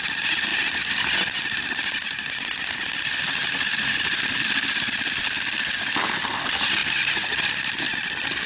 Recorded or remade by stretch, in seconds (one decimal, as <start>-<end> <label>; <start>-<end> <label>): 0.0-0.5 recorded; 0.5-2.9 remade; 2.9-8.5 recorded